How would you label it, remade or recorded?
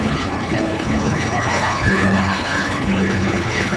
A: remade